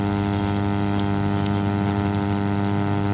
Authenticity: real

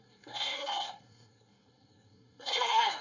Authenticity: fake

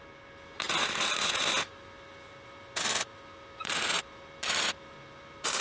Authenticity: real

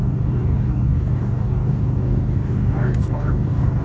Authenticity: fake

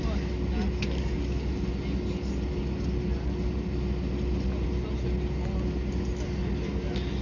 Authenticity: real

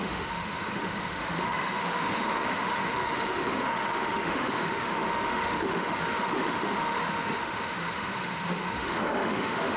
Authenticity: fake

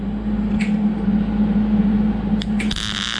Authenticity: real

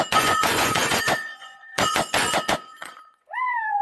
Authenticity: fake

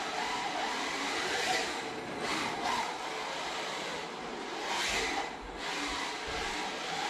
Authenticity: real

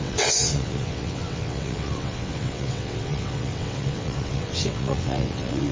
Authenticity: fake